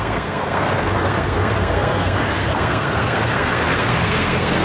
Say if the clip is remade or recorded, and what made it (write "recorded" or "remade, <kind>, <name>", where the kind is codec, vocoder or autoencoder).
remade, codec, SNAC